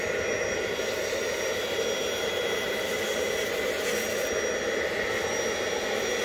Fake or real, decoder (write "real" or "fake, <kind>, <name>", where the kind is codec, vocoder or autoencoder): real